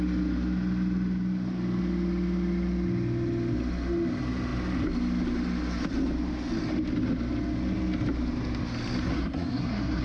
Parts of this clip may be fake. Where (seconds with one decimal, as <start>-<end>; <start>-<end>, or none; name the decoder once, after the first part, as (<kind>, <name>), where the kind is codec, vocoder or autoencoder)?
9.1-10.0 (codec, SNAC)